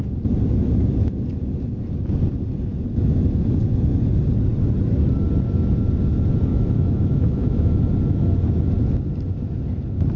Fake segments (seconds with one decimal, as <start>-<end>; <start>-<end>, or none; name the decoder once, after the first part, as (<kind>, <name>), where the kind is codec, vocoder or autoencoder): 6.5-7.8 (autoencoder, DAC-VAE)